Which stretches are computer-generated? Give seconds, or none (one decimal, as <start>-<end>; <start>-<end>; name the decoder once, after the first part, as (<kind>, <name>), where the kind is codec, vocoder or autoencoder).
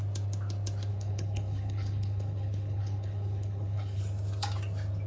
0.9-4.0 (codec, HILCodec)